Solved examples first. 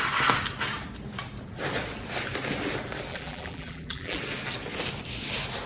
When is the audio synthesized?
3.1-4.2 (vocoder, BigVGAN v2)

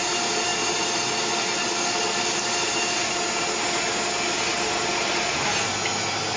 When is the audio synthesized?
4.5-5.7 (vocoder, BigVGAN v2)